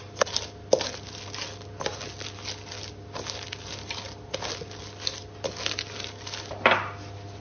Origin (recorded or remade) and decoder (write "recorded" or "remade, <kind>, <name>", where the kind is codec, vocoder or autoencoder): recorded